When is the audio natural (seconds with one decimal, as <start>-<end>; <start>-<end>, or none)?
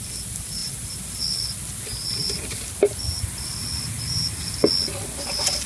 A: 0.0-5.7